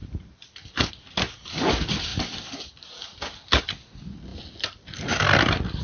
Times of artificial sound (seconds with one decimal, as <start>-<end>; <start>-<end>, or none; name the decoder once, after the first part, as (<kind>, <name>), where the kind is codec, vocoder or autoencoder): 0.0-0.9 (vocoder, BigVGAN v2); 2.1-3.6; 4.3-5.8